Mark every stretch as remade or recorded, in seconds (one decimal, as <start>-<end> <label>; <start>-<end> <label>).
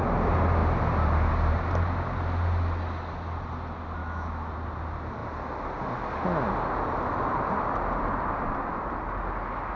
0.0-4.0 recorded; 4.0-4.5 remade; 4.5-9.8 recorded